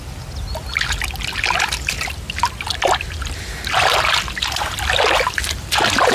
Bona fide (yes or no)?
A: yes